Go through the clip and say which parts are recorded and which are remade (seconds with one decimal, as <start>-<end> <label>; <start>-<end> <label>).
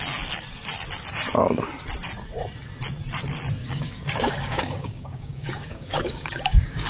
0.0-3.6 recorded; 3.6-6.9 remade